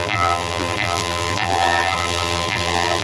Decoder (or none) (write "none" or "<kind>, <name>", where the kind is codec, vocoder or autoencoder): vocoder, BigVGAN v2